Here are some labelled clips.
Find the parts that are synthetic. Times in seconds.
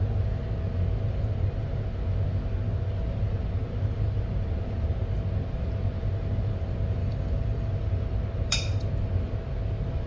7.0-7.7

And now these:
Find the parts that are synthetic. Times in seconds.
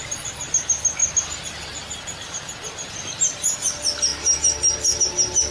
none